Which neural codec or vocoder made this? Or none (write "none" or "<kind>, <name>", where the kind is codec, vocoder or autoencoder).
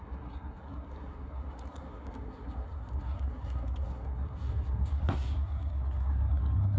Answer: codec, SNAC